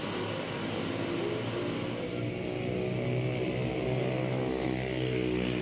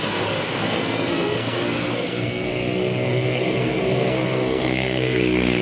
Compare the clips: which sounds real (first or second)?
first